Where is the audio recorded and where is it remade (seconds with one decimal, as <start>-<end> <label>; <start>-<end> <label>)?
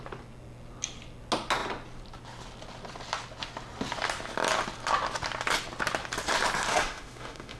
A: 0.0-6.7 recorded; 6.7-7.6 remade